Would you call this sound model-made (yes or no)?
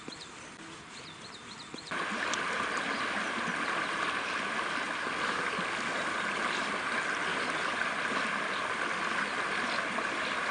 no